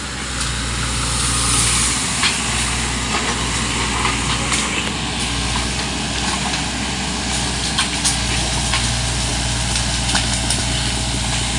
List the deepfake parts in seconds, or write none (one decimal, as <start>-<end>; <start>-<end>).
none